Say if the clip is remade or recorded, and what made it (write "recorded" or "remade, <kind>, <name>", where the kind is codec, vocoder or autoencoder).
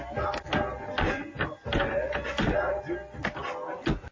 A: recorded